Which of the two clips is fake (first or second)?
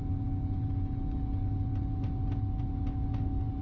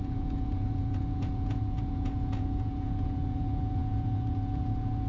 second